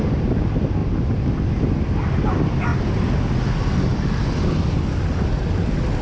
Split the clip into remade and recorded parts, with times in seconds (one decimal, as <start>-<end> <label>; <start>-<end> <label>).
0.0-6.0 recorded